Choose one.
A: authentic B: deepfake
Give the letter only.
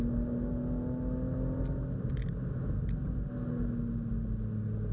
A